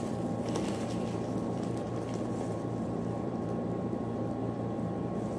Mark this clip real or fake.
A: fake